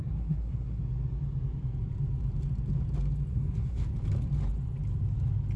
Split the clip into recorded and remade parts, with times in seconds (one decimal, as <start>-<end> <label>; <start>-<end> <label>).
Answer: 0.0-0.8 remade; 0.8-3.3 recorded; 3.3-3.9 remade; 3.9-5.6 recorded

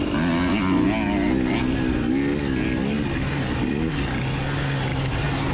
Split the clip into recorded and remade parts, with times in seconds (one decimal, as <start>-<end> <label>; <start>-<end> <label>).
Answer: 0.0-4.9 recorded; 4.9-5.5 remade

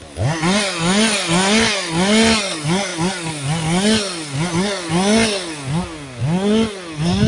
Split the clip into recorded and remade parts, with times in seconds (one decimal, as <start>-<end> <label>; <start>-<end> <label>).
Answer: 0.0-7.3 recorded

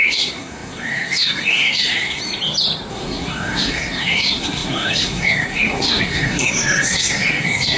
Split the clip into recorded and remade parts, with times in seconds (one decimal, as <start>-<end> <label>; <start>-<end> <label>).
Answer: 0.0-2.2 remade; 2.2-2.9 recorded; 2.9-7.8 remade

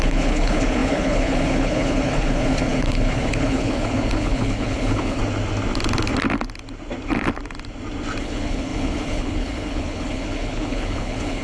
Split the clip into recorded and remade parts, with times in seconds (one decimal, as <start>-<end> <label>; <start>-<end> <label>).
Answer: 0.0-5.2 remade; 5.2-8.2 recorded; 8.2-11.4 remade

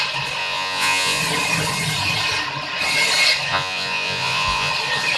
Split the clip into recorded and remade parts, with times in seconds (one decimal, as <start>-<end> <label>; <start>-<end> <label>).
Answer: 0.0-0.4 recorded; 0.4-1.2 remade; 1.2-3.5 recorded; 3.5-4.7 remade; 4.7-5.2 recorded

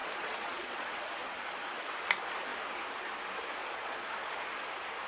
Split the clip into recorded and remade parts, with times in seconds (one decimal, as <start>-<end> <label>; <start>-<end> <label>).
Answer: 0.0-1.1 remade; 1.1-3.6 recorded; 3.6-4.1 remade; 4.1-5.1 recorded

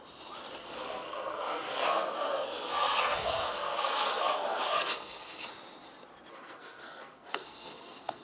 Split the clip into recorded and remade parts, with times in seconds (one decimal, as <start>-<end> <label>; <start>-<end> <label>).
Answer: 0.0-0.6 recorded; 0.6-5.5 remade; 5.5-6.3 recorded; 6.3-8.2 remade